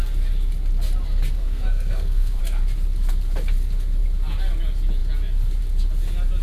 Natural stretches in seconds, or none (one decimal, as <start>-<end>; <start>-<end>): 0.0-1.4; 2.4-6.4